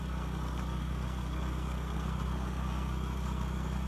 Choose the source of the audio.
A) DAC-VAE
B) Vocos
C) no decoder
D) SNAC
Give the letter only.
D